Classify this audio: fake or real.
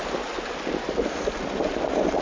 real